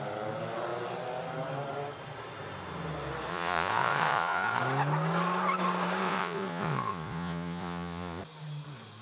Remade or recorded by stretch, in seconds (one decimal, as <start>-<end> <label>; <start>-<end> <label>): 0.0-3.3 recorded; 3.3-4.6 remade; 4.6-6.0 recorded; 6.0-8.2 remade; 8.2-9.0 recorded